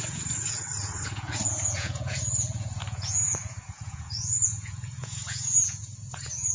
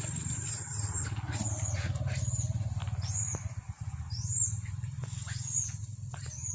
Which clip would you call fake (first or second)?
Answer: first